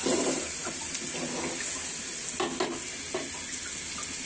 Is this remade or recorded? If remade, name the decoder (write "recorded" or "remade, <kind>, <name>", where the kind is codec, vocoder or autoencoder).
recorded